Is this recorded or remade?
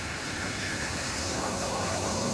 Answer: remade